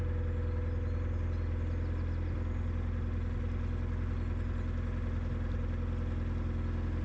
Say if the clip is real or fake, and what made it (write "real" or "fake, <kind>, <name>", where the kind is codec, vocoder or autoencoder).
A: real